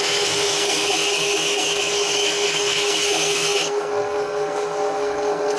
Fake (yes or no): yes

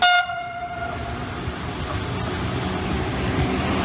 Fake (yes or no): no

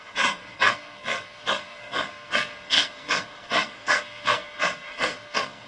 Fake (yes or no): yes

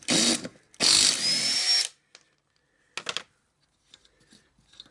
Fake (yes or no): no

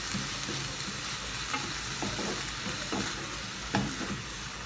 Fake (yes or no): no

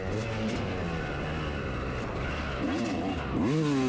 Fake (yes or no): no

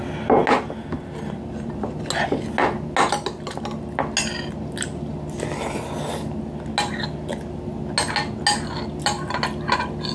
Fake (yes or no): no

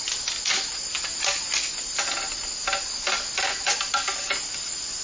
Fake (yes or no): no